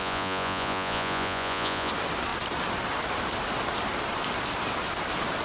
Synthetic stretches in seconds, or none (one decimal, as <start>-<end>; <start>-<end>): 0.0-1.9